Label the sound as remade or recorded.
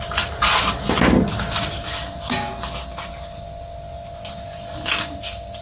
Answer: recorded